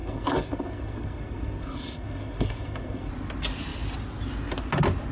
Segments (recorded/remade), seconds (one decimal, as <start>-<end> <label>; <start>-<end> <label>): 0.0-3.1 remade; 3.1-5.1 recorded